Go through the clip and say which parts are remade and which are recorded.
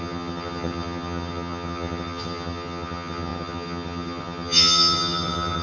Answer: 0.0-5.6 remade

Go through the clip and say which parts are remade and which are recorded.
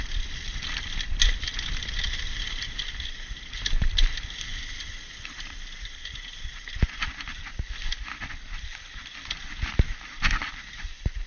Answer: 0.0-11.3 remade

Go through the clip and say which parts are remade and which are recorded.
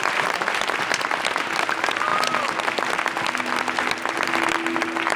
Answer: 0.0-5.2 recorded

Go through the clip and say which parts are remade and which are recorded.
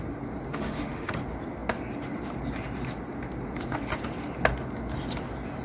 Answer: 0.0-0.5 recorded; 0.5-1.1 remade; 1.1-5.6 recorded